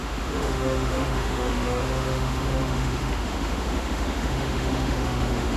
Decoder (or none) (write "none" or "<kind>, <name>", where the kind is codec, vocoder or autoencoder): autoencoder, DAC-VAE